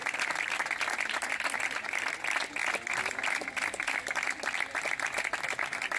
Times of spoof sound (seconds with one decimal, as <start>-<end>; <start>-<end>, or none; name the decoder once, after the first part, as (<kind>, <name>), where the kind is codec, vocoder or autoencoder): 0.0-0.8 (vocoder, BigVGAN v2)